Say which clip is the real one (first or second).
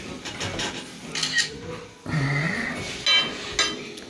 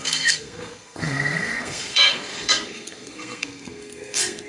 first